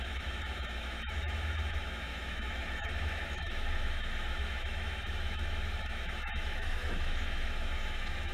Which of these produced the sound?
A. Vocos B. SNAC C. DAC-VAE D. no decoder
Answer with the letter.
C